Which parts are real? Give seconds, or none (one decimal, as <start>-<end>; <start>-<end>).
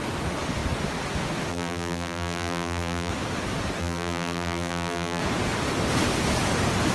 0.0-1.5; 3.1-3.8; 5.2-6.9